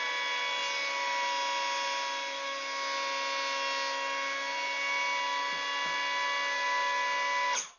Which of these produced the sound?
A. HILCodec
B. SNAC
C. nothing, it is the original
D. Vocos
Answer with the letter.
C